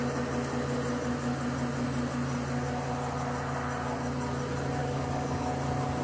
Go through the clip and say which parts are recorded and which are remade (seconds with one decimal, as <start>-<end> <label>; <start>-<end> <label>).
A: 0.0-4.8 recorded; 4.8-5.5 remade; 5.5-6.0 recorded